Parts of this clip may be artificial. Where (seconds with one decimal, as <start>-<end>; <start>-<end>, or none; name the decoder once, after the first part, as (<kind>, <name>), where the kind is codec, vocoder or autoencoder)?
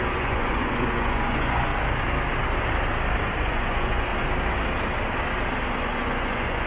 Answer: 0.0-1.7 (vocoder, Vocos); 3.4-4.1; 5.8-6.7